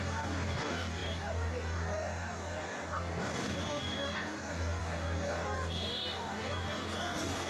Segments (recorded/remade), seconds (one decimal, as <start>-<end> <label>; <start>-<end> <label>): 0.0-7.5 remade